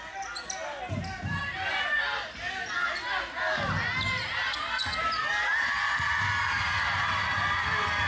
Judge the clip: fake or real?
real